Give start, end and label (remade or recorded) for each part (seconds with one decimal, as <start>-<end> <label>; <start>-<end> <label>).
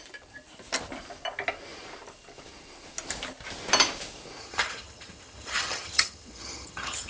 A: 0.0-4.4 recorded; 4.4-7.1 remade